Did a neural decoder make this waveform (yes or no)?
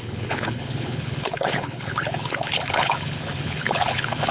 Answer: yes